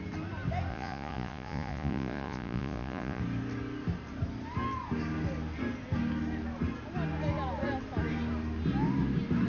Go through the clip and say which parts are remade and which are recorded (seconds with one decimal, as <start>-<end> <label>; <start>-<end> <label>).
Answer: 0.0-0.7 recorded; 0.7-3.2 remade; 3.2-9.5 recorded